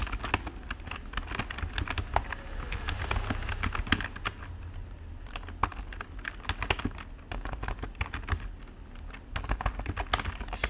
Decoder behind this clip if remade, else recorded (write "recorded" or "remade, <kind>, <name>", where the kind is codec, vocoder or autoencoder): recorded